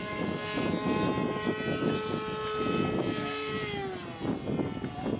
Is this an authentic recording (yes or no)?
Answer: yes